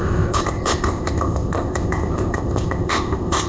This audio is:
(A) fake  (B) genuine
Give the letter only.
A